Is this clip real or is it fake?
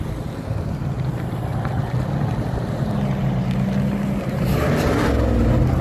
real